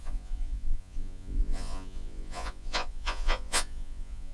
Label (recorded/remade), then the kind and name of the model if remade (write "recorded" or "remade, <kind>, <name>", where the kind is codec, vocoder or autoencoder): remade, vocoder, Vocos